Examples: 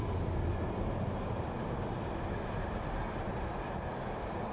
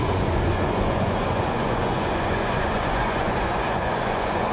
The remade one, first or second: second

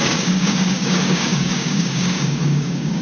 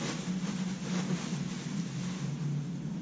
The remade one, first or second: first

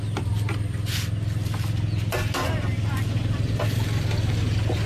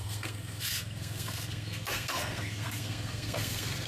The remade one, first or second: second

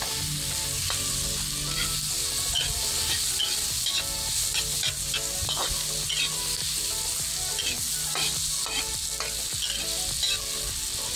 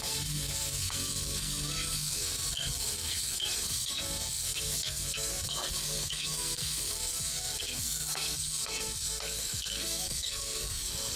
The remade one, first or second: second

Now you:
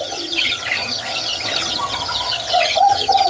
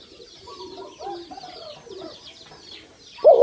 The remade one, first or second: first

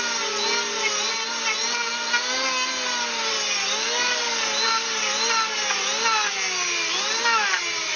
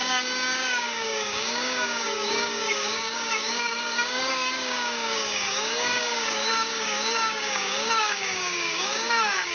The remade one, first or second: second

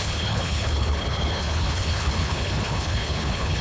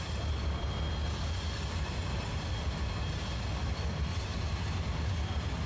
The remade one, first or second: first